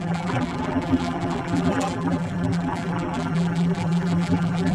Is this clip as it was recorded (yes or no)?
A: no